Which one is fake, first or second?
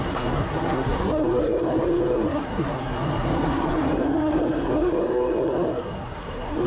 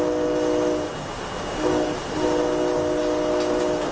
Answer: first